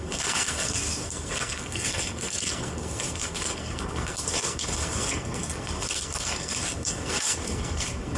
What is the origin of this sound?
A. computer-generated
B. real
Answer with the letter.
A